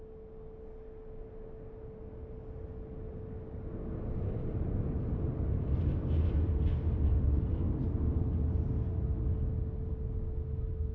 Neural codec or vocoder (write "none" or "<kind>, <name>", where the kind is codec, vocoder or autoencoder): none